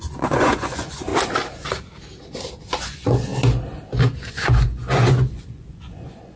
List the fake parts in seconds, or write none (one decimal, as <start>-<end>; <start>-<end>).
0.0-1.1; 2.7-3.3; 4.3-6.4